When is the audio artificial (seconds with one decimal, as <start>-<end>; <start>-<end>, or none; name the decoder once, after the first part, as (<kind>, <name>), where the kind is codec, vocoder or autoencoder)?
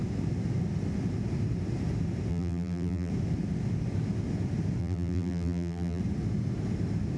2.3-3.1 (vocoder, BigVGAN v2); 4.8-6.0